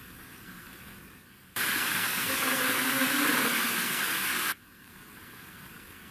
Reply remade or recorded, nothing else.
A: remade